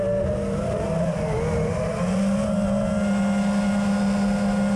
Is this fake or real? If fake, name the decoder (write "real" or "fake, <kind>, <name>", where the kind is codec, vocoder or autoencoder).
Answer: real